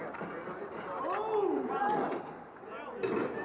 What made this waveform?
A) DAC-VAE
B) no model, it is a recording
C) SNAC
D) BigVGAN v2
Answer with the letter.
B